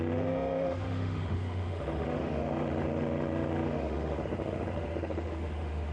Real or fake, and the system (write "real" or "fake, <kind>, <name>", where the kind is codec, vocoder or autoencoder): fake, autoencoder, DAC-VAE